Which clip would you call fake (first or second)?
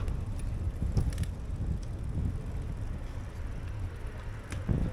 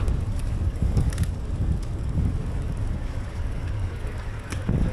second